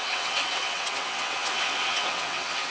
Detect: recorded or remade remade